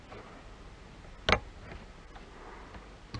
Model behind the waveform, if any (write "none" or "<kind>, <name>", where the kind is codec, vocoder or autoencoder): none